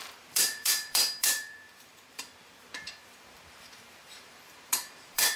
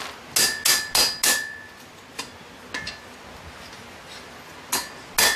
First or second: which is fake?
first